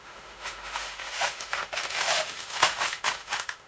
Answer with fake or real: fake